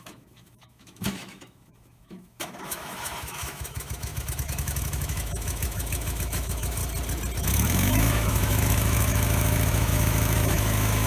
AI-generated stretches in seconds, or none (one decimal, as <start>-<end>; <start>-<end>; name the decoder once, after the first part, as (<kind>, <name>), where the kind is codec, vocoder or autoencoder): 0.0-6.8 (autoencoder, DAC-VAE); 7.4-11.1